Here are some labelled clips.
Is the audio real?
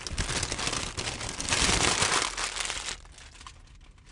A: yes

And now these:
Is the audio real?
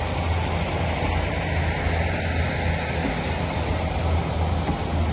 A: yes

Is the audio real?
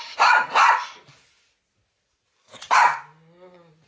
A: yes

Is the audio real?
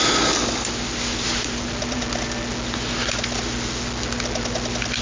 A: yes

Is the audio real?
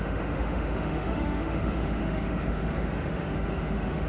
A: no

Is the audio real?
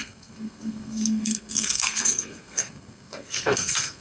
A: no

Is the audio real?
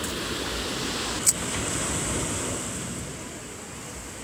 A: yes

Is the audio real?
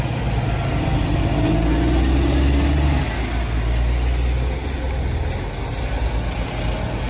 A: yes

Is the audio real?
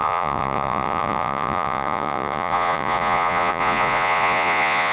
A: no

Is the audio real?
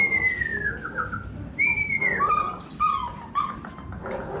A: yes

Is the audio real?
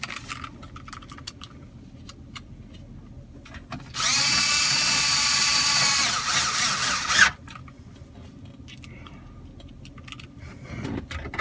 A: yes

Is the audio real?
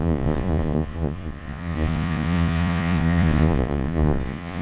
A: no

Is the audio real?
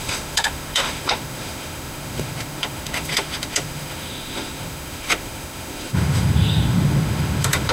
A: no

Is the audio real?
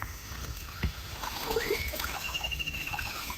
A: no